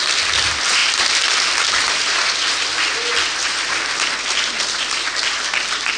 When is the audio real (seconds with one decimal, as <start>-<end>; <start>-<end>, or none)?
0.0-6.0